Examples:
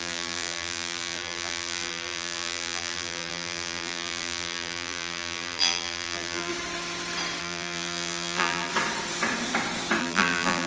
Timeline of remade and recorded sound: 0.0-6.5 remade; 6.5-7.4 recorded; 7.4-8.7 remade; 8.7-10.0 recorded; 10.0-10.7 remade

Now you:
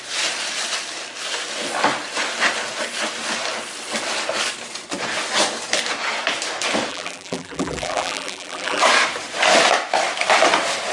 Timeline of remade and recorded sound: 0.0-6.9 recorded; 6.9-8.8 remade; 8.8-10.9 recorded